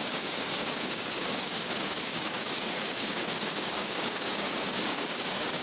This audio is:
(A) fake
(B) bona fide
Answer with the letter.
A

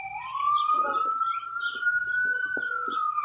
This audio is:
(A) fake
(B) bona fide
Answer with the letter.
B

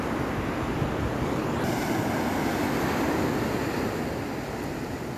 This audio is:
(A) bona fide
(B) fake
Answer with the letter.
A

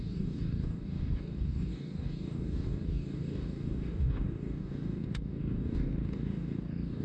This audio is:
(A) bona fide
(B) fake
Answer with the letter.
B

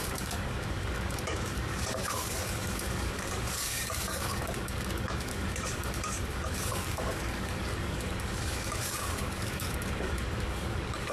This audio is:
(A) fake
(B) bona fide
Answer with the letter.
A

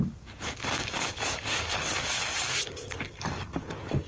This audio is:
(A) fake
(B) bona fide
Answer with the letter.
A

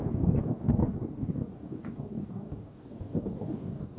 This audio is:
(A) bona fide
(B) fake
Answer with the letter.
B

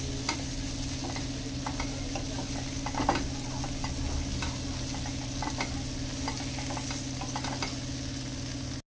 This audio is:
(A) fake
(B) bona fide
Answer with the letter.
B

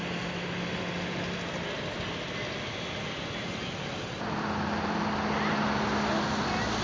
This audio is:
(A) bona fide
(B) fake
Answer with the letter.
A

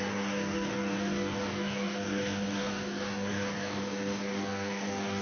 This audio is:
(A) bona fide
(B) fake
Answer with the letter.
B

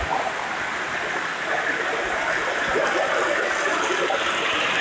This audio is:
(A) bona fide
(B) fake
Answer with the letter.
A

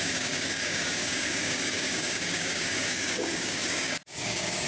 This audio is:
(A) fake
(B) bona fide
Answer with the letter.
A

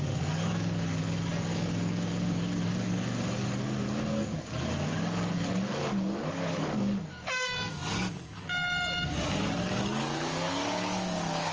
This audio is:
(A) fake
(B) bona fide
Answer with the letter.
A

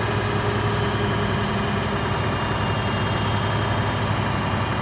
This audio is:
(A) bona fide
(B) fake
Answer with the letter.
A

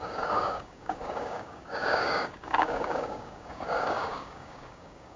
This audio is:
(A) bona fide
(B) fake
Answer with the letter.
B